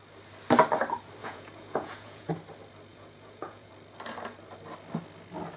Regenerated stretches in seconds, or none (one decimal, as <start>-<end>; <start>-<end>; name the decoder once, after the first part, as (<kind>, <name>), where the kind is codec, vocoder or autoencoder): 1.2-2.3 (vocoder, Vocos); 2.9-3.7